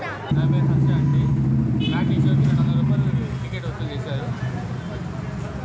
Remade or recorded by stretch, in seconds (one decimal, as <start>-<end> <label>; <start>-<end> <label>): 0.0-5.6 recorded